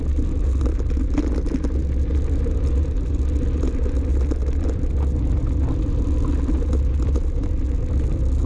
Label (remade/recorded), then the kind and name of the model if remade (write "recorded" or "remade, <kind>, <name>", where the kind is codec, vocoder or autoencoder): recorded